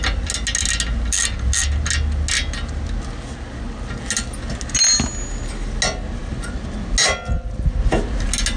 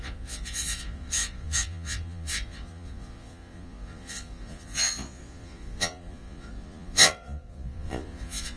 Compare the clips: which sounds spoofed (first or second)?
second